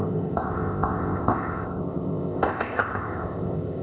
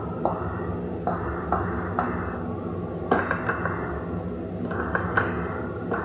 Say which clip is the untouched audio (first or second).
second